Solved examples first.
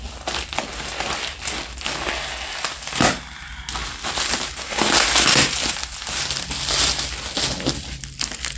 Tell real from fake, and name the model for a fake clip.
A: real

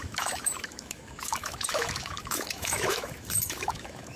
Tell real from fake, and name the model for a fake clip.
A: fake, autoencoder, DAC-VAE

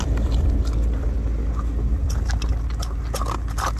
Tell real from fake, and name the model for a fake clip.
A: real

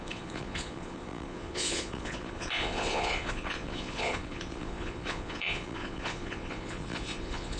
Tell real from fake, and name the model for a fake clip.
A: fake, vocoder, Vocos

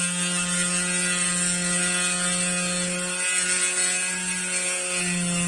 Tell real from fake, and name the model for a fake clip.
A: real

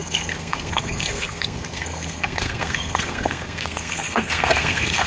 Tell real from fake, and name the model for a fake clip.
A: fake, codec, SNAC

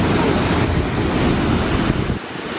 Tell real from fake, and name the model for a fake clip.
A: real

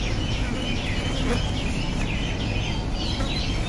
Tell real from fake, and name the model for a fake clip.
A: real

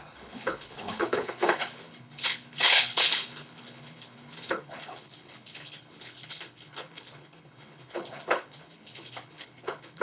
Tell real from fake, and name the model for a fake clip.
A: fake, codec, HILCodec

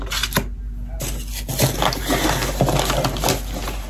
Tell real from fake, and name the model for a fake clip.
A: real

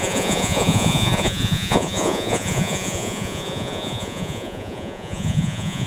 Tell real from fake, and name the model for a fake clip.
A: fake, vocoder, Vocos